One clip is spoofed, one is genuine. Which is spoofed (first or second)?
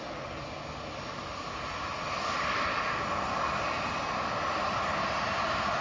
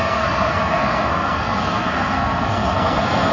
second